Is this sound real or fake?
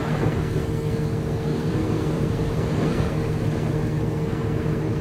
fake